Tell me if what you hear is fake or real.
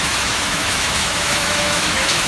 fake